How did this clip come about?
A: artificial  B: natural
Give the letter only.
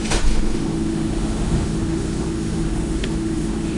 A